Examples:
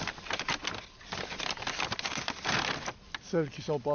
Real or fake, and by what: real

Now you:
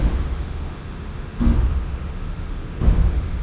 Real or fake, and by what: fake, autoencoder, DAC-VAE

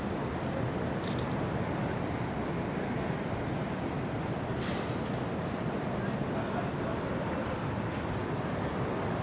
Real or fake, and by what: real